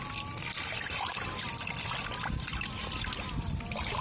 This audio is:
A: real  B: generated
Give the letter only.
B